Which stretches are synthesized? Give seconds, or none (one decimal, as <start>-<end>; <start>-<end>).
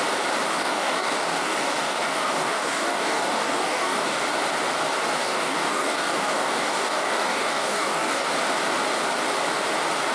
0.5-4.2; 5.2-8.3